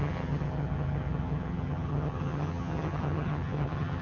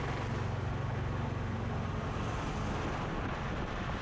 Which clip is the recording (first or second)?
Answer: second